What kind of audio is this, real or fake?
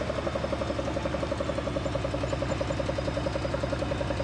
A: real